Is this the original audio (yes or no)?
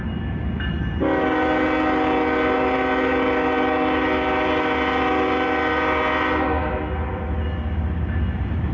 yes